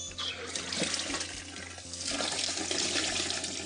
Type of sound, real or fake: real